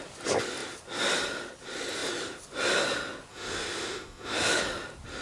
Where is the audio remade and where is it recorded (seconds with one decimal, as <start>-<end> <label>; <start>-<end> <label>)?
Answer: 0.0-3.3 recorded; 3.3-4.6 remade; 4.6-5.2 recorded